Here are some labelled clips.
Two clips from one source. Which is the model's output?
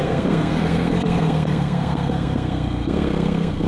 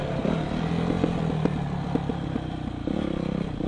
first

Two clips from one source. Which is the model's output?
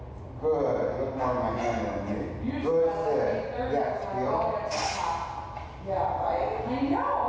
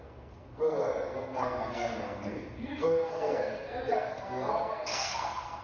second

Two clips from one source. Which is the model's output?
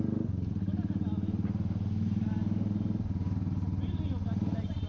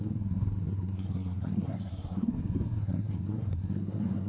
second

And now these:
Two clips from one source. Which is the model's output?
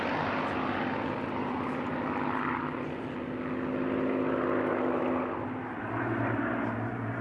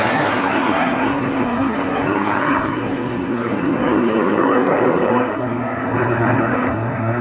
second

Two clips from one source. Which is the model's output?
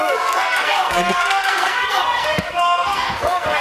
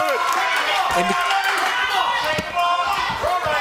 first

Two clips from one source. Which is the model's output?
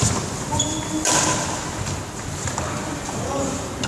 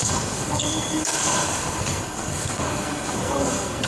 second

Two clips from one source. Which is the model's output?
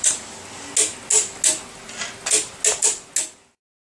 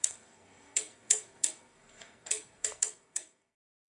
second